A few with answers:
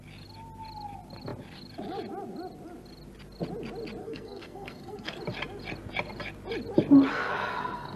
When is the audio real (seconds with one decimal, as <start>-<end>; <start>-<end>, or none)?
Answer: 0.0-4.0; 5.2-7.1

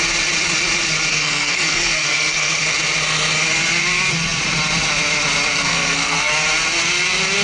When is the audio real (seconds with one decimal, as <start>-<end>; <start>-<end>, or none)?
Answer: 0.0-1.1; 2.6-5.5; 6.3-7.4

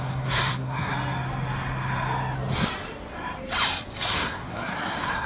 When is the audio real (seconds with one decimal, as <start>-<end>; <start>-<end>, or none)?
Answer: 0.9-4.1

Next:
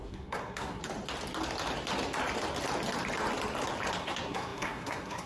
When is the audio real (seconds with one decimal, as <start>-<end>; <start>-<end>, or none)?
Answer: 0.8-4.0